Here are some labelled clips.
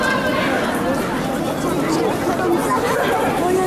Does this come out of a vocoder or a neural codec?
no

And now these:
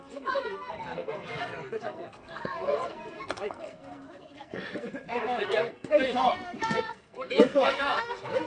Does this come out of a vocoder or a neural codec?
yes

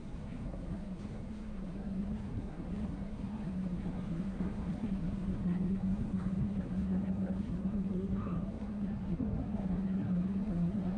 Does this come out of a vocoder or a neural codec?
yes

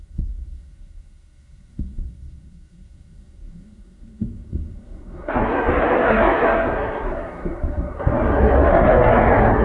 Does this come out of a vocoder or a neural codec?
yes